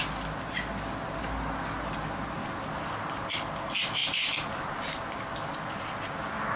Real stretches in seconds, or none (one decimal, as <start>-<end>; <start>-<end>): 0.0-6.6